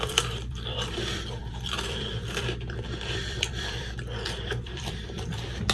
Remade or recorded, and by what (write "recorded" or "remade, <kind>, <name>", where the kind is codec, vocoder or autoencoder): remade, vocoder, BigVGAN v2